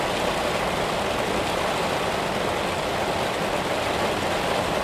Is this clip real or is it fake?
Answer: real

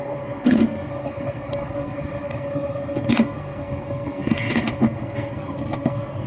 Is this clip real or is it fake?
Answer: fake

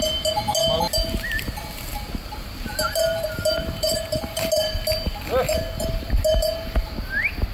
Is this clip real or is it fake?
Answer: real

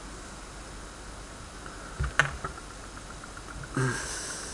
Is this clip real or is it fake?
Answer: real